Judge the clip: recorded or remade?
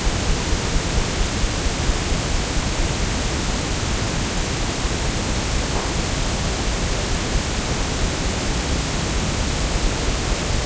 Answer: recorded